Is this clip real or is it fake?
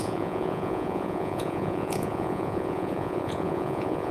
fake